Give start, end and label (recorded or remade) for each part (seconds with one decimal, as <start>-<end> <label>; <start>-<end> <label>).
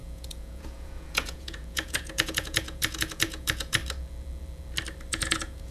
0.0-3.8 remade; 3.8-5.1 recorded; 5.1-5.7 remade